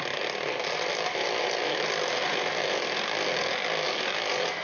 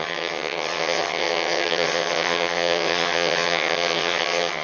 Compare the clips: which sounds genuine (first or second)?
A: first